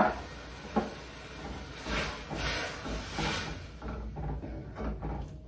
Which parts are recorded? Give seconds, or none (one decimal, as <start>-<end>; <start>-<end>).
0.0-5.5